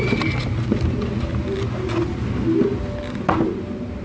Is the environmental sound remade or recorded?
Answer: recorded